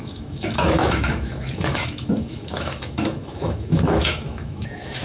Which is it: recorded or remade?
remade